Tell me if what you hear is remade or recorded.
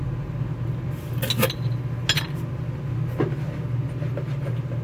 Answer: recorded